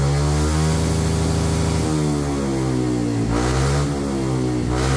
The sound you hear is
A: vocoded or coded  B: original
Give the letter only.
B